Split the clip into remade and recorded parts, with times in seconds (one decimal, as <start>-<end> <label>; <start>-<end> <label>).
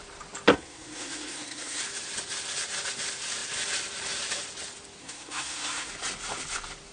0.0-0.5 recorded; 0.5-1.8 remade; 1.8-5.0 recorded; 5.0-5.9 remade; 5.9-6.9 recorded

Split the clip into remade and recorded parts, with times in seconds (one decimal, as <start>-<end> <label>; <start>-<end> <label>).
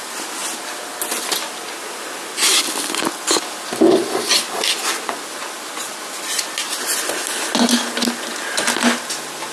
0.0-9.5 recorded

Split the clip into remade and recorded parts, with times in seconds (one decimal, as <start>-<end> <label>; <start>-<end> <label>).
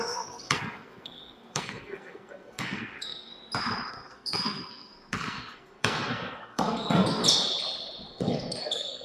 0.0-3.3 remade; 3.3-3.9 recorded; 3.9-7.2 remade; 7.2-8.1 recorded; 8.1-9.0 remade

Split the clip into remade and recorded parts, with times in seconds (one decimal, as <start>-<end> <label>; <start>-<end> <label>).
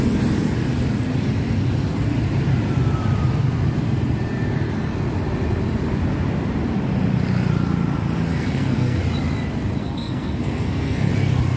0.0-8.3 recorded; 8.3-9.0 remade; 9.0-9.8 recorded; 9.8-11.1 remade; 11.1-11.6 recorded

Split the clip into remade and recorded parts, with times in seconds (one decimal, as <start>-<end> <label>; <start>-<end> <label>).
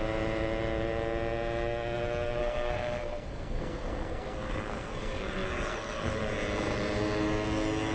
0.0-2.4 recorded; 2.4-6.2 remade; 6.2-7.9 recorded